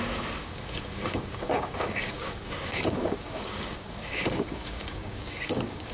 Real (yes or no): no